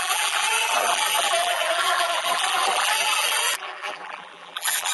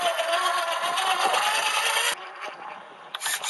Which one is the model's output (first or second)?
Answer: first